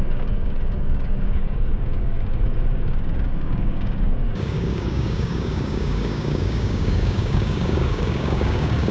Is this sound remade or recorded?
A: remade